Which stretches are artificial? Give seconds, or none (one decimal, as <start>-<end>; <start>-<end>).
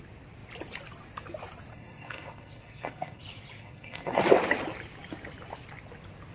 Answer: 1.7-3.2; 3.6-4.2